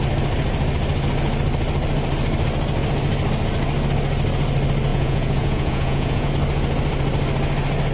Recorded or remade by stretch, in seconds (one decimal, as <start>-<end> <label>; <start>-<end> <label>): 0.0-4.9 recorded; 4.9-6.3 remade; 6.3-7.9 recorded